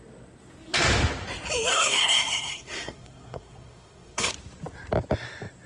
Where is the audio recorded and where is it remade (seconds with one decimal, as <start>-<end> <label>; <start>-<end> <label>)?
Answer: 0.0-1.7 recorded; 1.7-4.3 remade; 4.3-5.7 recorded